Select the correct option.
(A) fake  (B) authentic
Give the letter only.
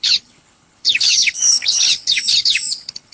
A